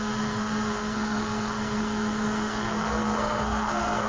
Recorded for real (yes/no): no